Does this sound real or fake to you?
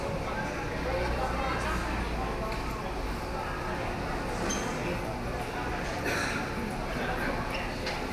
real